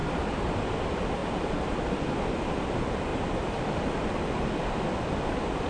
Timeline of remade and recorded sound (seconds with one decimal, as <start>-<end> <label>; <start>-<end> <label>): 0.0-0.7 remade; 0.7-1.2 recorded; 1.2-2.0 remade; 2.0-5.7 recorded